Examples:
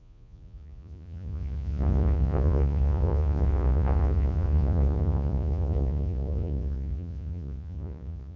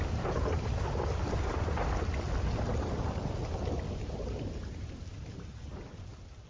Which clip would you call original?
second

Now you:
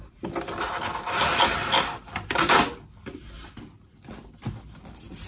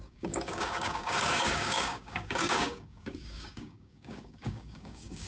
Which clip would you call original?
first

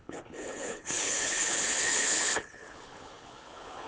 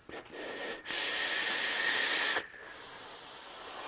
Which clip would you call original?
second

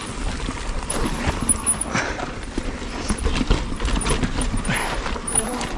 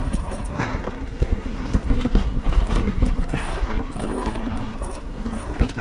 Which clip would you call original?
first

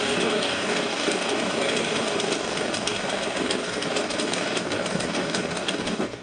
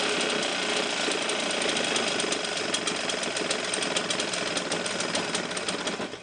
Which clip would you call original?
second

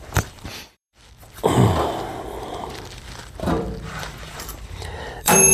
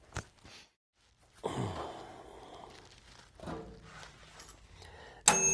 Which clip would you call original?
second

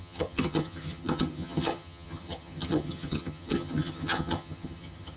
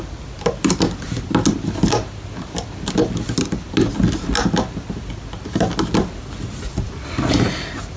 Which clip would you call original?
second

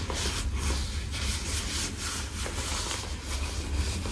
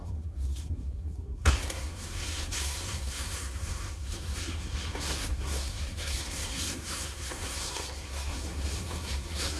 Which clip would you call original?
first